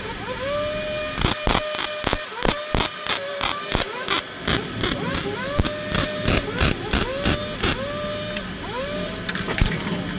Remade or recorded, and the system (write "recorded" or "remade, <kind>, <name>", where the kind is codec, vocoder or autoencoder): recorded